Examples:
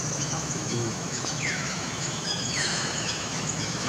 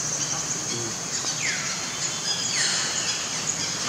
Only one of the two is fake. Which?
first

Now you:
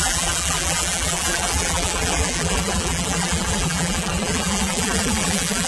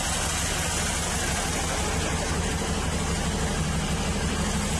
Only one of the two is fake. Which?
first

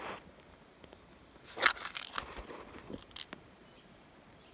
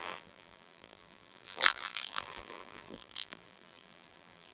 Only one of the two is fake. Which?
second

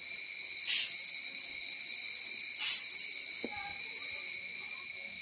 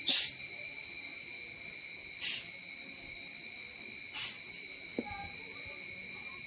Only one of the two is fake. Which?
first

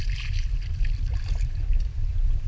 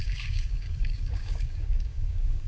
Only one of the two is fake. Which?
second